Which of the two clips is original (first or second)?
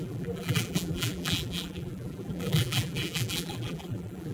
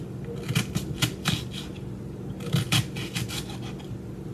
second